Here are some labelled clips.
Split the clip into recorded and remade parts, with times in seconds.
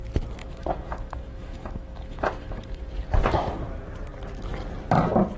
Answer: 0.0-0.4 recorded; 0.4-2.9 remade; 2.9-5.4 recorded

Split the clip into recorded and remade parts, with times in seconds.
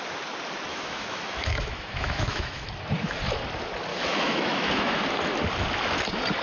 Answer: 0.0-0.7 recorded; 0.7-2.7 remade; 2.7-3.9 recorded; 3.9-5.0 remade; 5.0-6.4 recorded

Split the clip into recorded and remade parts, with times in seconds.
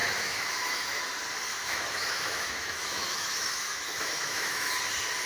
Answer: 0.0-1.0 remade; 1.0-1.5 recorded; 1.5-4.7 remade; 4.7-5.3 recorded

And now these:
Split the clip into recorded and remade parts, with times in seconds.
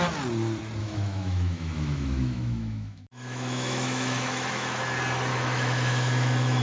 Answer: 0.0-0.8 recorded; 0.8-4.8 remade; 4.8-5.3 recorded; 5.3-6.6 remade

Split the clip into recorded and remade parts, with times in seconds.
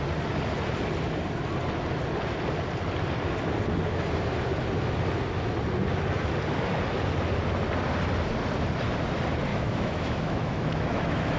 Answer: 0.0-9.5 recorded; 9.5-11.4 remade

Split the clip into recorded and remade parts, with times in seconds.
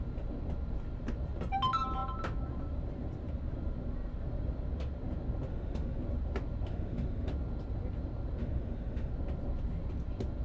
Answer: 0.0-5.5 recorded; 5.5-6.0 remade; 6.0-6.7 recorded; 6.7-7.3 remade; 7.3-8.4 recorded; 8.4-9.1 remade; 9.1-10.4 recorded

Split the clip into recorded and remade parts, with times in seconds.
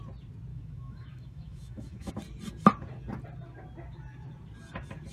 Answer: 0.0-0.5 recorded; 0.5-2.1 remade; 2.1-5.1 recorded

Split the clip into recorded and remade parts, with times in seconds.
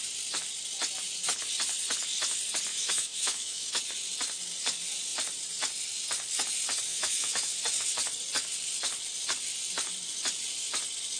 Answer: 0.0-2.7 recorded; 2.7-3.8 remade; 3.8-6.9 recorded; 6.9-7.5 remade; 7.5-11.2 recorded